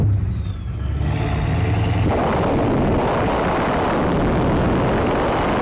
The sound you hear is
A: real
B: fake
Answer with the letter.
A